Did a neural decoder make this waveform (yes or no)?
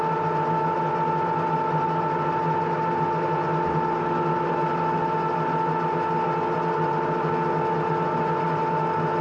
no